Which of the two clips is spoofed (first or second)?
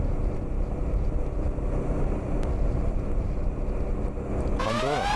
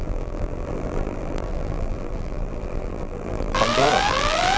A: second